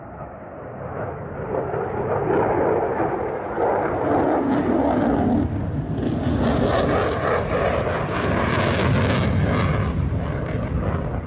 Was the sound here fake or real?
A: real